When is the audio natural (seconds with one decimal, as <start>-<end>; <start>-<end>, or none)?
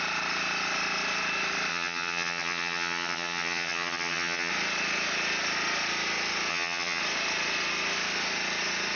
0.0-1.7; 4.5-6.5; 7.0-8.9